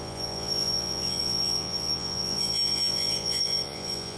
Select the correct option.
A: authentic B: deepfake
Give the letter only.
B